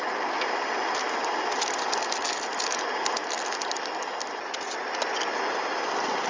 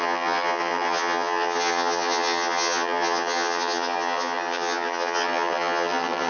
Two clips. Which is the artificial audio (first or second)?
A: second